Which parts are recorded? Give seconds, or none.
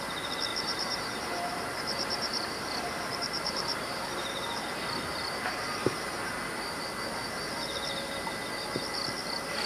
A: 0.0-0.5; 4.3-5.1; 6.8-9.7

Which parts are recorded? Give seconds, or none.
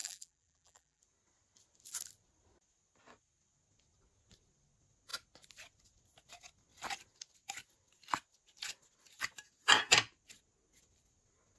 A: 1.0-11.6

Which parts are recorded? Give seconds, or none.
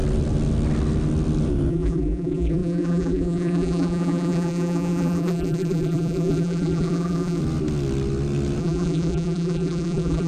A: 0.0-1.7; 7.4-8.6